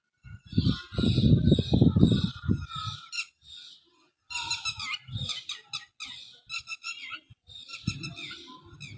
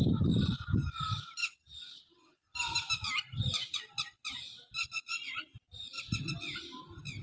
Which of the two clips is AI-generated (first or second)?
second